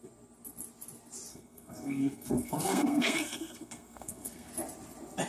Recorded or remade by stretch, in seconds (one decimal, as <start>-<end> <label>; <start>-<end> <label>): 0.0-1.3 recorded; 1.3-4.5 remade; 4.5-5.3 recorded